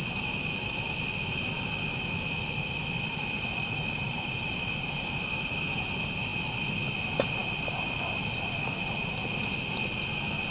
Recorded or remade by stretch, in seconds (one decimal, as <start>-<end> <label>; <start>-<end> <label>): 0.0-3.1 recorded; 3.1-4.4 remade; 4.4-10.5 recorded